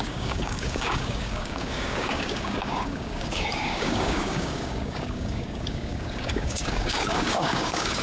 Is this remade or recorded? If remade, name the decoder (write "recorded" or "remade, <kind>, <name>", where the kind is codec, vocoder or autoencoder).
remade, codec, DAC